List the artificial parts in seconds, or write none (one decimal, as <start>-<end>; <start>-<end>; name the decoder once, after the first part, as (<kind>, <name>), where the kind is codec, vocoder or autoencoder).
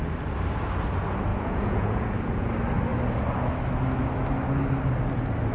1.3-2.5 (vocoder, Vocos)